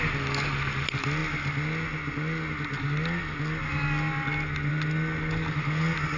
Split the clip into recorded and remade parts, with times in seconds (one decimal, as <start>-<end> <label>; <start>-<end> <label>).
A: 0.0-6.2 recorded